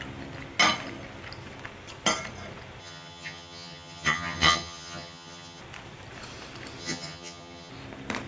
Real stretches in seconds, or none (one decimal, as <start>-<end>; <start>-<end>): 0.0-2.8; 5.6-6.8; 7.7-8.3